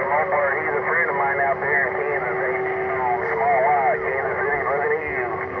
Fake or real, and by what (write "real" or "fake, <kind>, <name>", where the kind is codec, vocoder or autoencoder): real